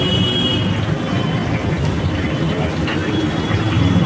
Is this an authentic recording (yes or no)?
yes